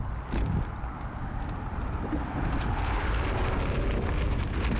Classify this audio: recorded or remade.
recorded